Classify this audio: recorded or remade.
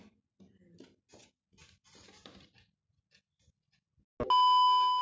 recorded